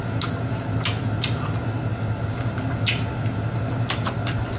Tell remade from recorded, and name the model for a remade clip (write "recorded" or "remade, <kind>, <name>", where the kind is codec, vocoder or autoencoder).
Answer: recorded